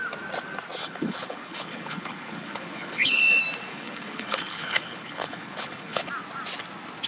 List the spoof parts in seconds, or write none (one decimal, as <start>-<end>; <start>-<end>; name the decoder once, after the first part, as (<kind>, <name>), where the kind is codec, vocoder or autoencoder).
0.8-3.2 (codec, HILCodec); 3.7-6.1